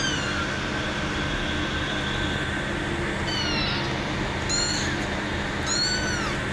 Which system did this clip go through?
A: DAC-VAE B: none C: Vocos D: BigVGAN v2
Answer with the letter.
B